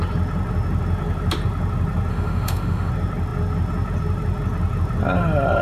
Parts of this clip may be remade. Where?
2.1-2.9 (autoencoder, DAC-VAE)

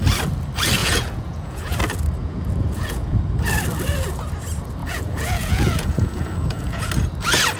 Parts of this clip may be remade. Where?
0.8-1.8 (vocoder, Vocos); 2.2-3.2; 4.8-6.9

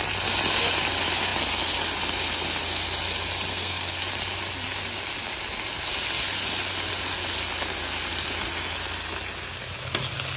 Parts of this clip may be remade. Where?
3.5-4.0 (codec, SNAC)

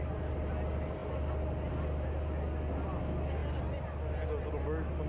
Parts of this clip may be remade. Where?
none